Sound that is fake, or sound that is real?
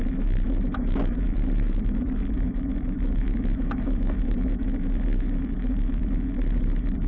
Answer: fake